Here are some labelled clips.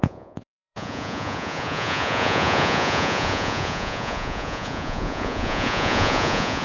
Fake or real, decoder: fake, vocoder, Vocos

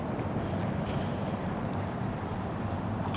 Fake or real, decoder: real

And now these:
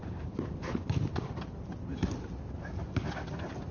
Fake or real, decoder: real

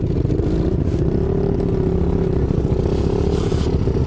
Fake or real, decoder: real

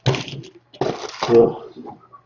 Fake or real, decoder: real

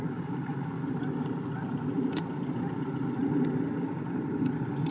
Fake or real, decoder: fake, vocoder, BigVGAN v2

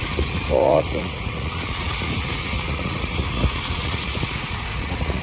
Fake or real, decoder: fake, vocoder, Vocos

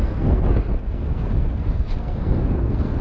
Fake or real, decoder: fake, codec, SNAC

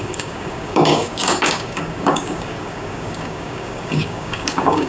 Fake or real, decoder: fake, codec, DAC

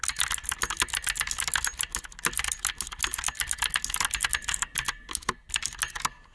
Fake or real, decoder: real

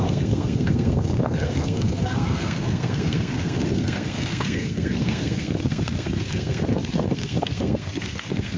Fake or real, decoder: fake, codec, SNAC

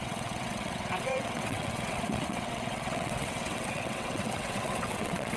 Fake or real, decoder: fake, vocoder, WaveNeXt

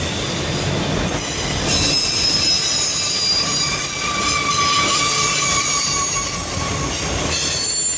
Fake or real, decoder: real